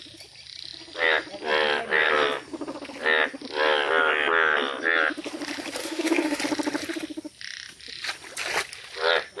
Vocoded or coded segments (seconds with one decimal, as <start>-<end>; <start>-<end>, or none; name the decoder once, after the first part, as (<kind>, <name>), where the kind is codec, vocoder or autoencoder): 5.8-6.4 (autoencoder, DAC-VAE)